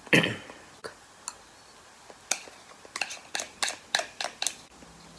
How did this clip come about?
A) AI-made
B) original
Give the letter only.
B